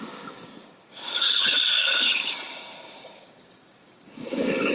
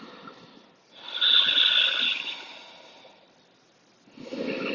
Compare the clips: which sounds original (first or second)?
second